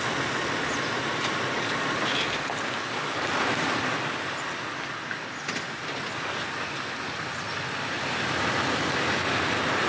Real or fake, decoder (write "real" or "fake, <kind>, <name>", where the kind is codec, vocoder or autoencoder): real